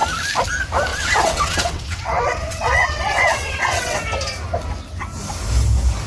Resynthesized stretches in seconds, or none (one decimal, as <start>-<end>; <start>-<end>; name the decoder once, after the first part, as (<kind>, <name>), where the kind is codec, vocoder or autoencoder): 0.9-4.0 (vocoder, WaveNeXt)